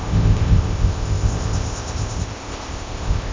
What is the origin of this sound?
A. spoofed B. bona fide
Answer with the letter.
A